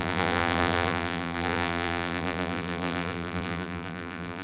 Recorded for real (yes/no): no